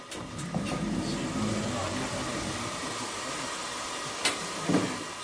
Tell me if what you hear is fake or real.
real